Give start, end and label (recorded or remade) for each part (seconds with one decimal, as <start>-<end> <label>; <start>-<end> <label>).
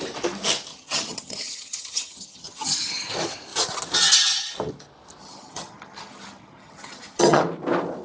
0.0-0.7 recorded; 0.7-3.1 remade; 3.1-5.2 recorded; 5.2-7.4 remade; 7.4-8.0 recorded